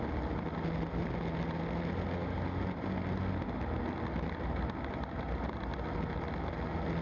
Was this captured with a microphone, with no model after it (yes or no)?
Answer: yes